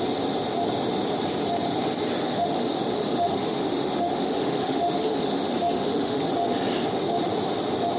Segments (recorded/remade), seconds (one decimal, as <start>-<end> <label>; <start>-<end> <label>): 0.0-2.2 recorded; 2.2-6.2 remade; 6.2-8.0 recorded